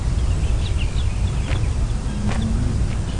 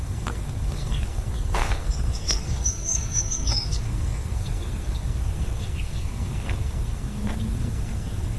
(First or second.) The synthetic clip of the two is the second